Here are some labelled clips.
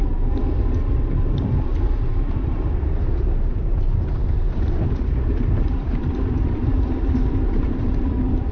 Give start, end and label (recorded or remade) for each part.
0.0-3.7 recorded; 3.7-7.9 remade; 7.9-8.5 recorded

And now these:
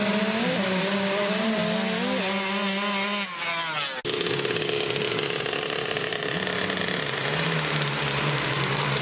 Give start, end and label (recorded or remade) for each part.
0.0-1.6 remade; 1.6-5.4 recorded; 5.4-7.2 remade; 7.2-8.2 recorded; 8.2-9.0 remade

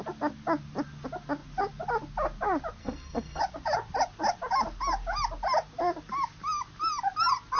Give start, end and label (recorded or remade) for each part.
0.0-2.8 recorded; 2.8-3.4 remade; 3.4-7.6 recorded

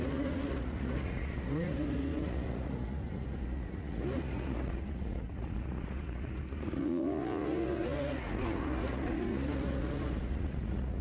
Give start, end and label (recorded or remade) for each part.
0.0-11.0 remade

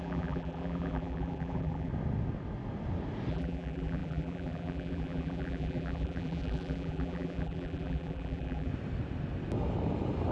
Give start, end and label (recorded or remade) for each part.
0.0-1.9 remade; 1.9-3.3 recorded; 3.3-8.7 remade; 8.7-10.3 recorded

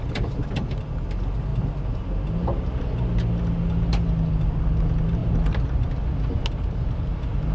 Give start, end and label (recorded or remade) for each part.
0.0-5.2 recorded; 5.2-6.1 remade; 6.1-7.5 recorded

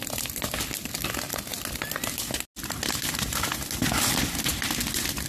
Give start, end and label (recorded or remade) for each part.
0.0-5.3 recorded